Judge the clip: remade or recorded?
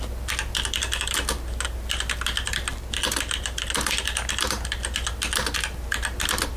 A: recorded